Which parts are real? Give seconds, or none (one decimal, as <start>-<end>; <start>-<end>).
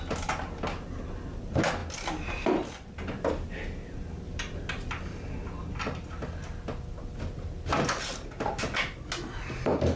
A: 0.0-10.0